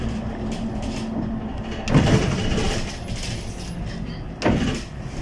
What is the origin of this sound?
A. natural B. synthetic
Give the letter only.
A